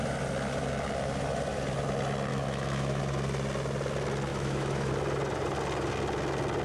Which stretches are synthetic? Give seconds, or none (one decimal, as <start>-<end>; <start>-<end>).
2.3-3.0; 4.3-4.9